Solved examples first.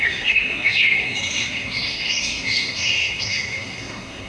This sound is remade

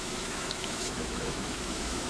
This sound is remade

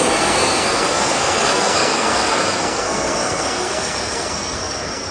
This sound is remade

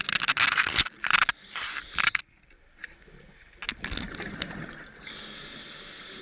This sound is recorded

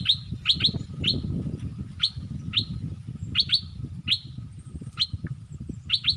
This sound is recorded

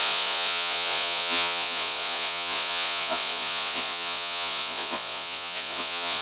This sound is remade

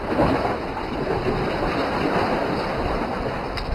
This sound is recorded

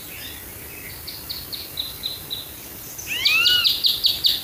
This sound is recorded